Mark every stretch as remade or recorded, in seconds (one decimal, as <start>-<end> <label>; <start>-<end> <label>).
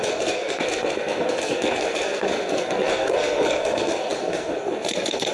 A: 0.0-5.3 remade